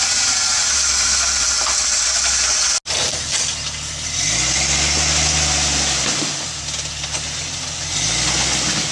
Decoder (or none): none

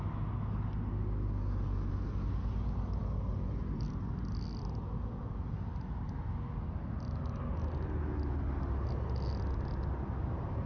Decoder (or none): none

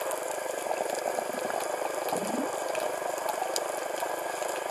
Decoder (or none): none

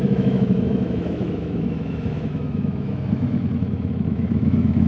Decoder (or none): autoencoder, DAC-VAE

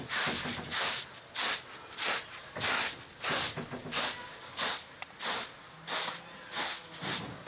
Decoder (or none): none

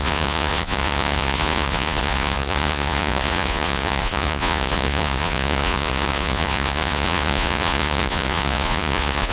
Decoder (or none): vocoder, Vocos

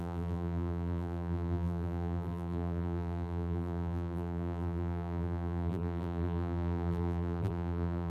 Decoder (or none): vocoder, BigVGAN v2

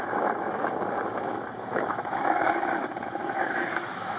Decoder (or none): autoencoder, DAC-VAE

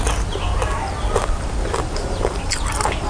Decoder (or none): none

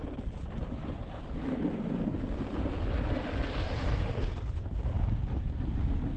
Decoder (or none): none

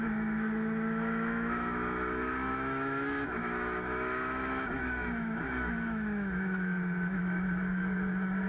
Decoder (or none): autoencoder, DAC-VAE